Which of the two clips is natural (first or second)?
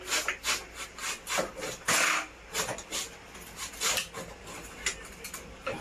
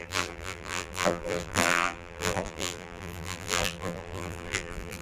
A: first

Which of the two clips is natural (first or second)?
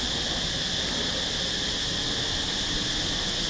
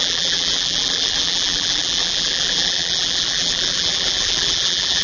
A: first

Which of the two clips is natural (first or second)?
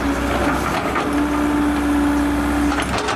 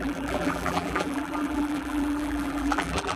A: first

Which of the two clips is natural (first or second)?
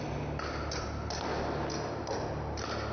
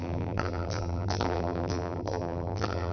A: first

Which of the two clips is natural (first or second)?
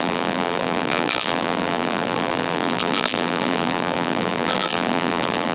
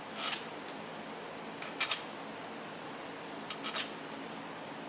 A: second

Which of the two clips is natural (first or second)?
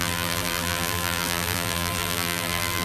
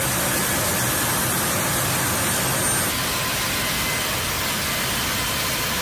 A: second